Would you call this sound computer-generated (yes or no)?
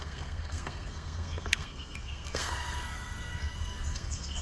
yes